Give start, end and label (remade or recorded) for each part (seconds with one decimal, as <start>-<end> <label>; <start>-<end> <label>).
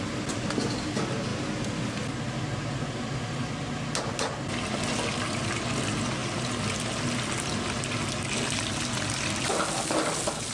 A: 0.0-10.5 recorded